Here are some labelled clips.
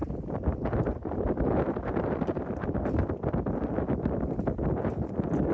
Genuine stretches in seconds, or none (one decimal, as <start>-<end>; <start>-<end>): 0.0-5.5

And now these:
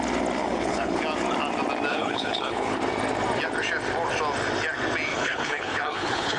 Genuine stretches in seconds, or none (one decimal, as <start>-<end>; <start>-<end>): 0.0-0.4; 1.0-1.9; 2.8-5.1

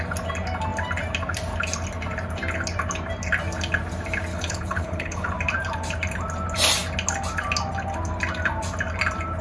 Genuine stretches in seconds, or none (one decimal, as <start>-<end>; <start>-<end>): 0.0-4.3; 5.3-9.4

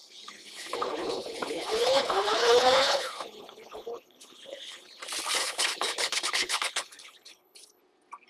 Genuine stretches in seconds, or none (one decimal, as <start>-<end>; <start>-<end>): 5.0-5.4; 7.8-8.3